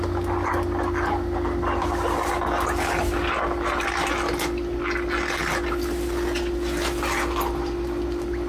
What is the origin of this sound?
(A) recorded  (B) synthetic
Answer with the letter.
A